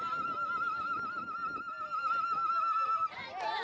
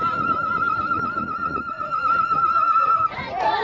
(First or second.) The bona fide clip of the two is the first